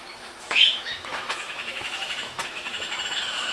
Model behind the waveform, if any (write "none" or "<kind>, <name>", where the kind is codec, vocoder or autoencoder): autoencoder, DAC-VAE